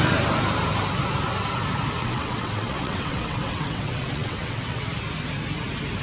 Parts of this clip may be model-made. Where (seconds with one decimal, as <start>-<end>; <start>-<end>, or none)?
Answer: 2.0-4.8